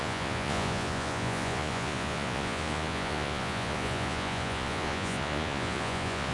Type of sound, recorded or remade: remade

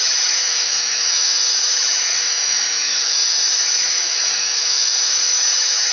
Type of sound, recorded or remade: remade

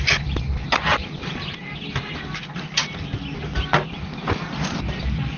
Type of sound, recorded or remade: recorded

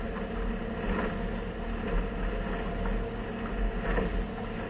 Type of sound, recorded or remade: recorded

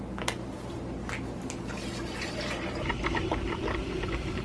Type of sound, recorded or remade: recorded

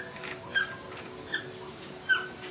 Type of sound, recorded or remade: recorded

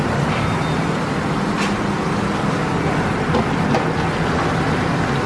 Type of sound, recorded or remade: recorded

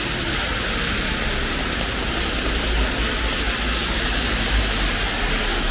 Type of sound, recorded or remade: recorded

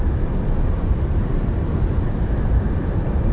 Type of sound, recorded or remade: remade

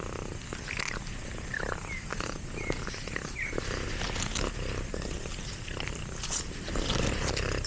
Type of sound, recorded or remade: recorded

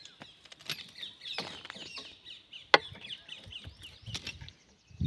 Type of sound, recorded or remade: recorded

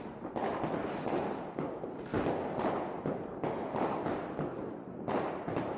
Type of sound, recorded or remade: recorded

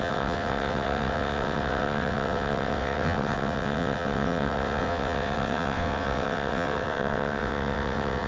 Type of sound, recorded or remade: remade